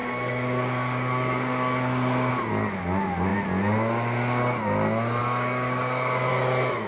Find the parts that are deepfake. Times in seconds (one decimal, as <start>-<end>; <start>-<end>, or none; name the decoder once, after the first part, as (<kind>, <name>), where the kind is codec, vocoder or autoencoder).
0.0-2.3 (codec, DAC); 5.2-6.3